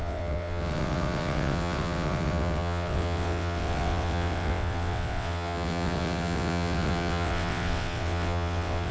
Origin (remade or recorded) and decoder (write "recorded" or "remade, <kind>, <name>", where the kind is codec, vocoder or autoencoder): remade, vocoder, WaveNeXt